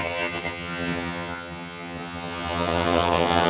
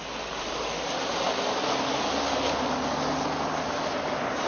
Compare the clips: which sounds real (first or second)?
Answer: second